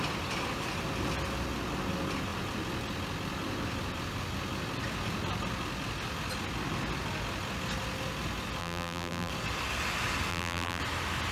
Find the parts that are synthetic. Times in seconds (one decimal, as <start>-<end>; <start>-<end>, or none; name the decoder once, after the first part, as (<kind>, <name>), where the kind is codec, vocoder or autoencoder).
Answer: 8.6-9.3 (vocoder, BigVGAN v2); 10.3-10.8